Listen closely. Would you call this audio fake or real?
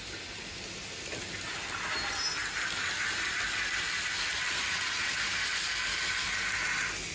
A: real